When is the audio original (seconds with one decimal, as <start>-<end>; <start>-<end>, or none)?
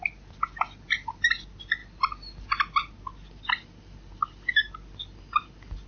0.0-5.9